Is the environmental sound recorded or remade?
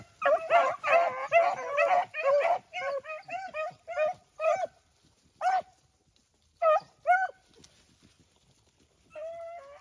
recorded